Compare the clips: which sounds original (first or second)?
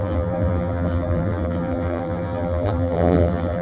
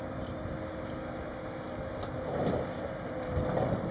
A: second